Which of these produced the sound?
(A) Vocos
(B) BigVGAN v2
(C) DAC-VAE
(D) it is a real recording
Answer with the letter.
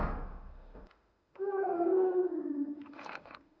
C